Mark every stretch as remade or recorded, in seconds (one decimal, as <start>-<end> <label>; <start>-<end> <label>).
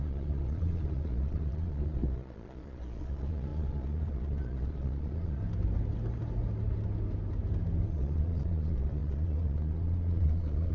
0.0-5.4 remade; 5.4-7.9 recorded; 7.9-10.7 remade